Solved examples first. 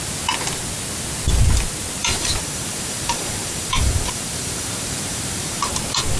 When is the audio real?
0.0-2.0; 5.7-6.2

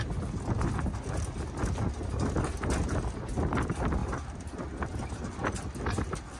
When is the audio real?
0.0-6.4

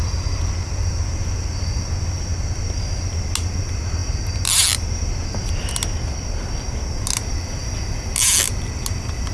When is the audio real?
0.0-9.3

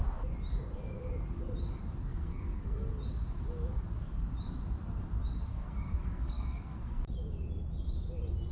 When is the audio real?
0.0-2.1; 2.9-5.5; 7.0-8.5

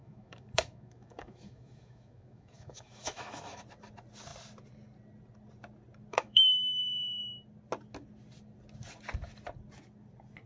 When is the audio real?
3.6-6.1; 7.2-10.5

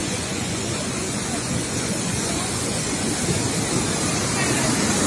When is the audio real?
3.1-5.1

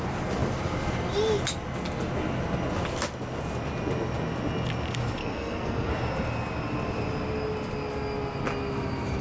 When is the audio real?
0.0-5.2; 5.9-9.2

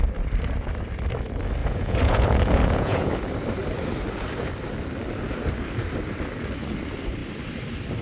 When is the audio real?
0.0-1.6; 3.1-8.0